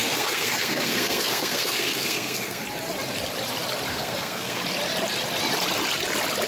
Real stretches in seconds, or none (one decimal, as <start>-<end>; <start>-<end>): 2.6-3.9; 4.6-6.5